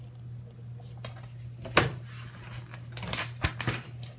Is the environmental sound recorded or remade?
recorded